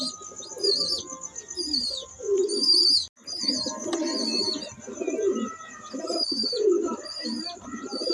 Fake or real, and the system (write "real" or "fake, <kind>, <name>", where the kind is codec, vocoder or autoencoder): real